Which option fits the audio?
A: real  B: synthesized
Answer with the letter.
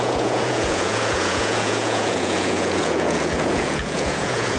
B